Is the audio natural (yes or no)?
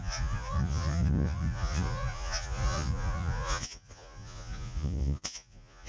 no